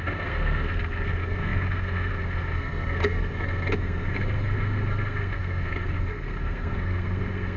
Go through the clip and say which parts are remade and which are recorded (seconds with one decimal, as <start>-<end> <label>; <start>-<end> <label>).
0.0-7.6 remade